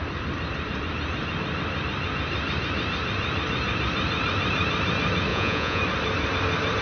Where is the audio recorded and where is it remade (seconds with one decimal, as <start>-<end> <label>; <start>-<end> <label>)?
0.0-5.3 recorded; 5.3-5.8 remade; 5.8-6.8 recorded